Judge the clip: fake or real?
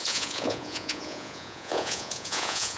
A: fake